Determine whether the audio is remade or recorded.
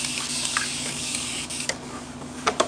remade